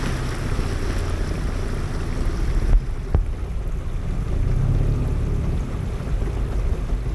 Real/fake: real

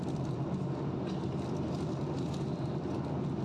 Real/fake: real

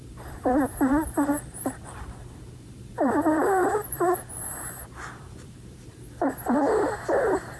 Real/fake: fake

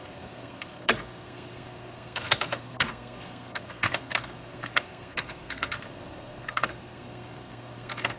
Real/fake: fake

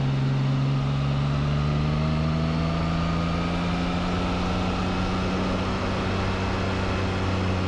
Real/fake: real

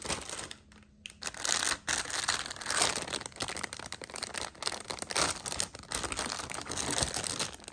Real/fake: real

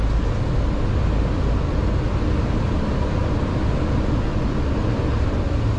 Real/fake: real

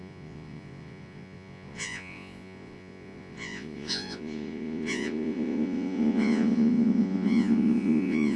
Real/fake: fake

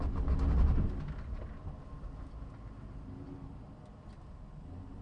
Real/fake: real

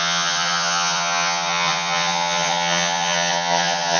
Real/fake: fake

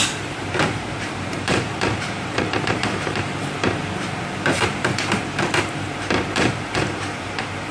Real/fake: fake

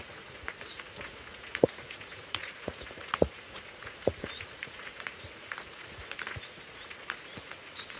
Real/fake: fake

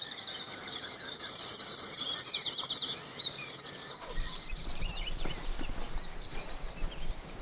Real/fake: fake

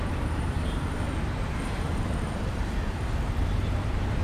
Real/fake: fake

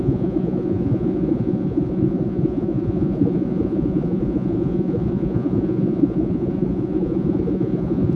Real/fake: fake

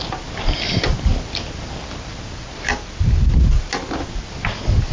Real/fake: real